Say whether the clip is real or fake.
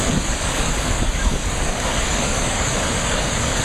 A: fake